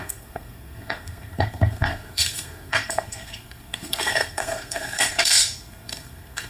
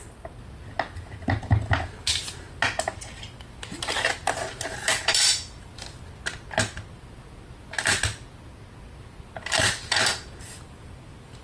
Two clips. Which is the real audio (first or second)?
second